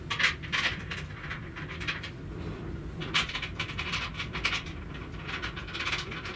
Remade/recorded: remade